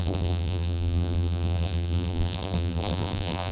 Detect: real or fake fake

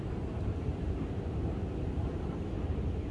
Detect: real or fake fake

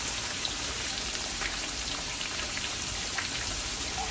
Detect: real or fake fake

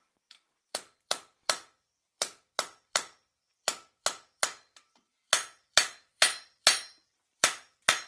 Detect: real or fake fake